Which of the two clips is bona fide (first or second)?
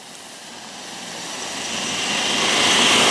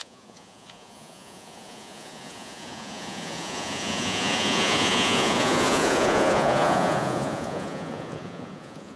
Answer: first